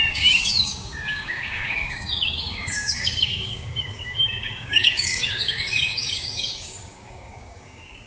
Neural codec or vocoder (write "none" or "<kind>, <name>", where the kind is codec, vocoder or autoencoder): codec, DAC